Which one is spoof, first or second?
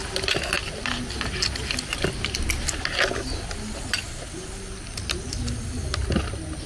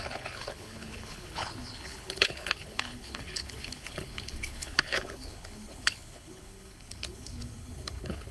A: second